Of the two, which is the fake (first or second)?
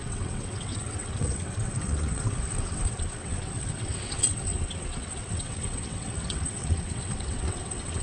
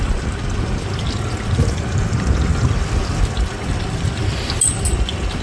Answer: first